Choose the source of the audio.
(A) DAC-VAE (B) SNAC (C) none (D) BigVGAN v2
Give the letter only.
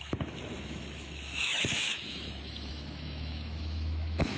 A